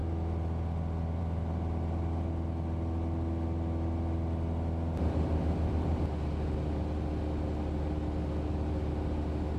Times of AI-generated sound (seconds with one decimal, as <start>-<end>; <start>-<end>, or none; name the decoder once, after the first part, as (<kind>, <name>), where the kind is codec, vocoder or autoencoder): none